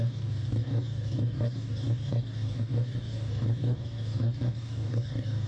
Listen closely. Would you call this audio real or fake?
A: fake